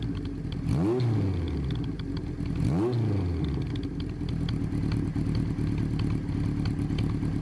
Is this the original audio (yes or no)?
yes